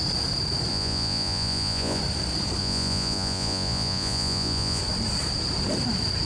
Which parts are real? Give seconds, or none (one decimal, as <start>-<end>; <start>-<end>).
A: 0.0-0.7; 2.0-2.6; 4.8-6.2